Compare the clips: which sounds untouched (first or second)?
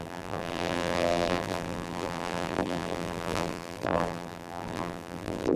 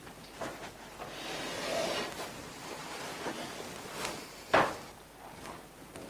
second